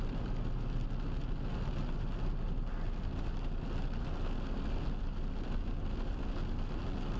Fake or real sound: real